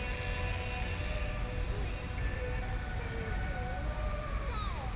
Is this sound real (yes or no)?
yes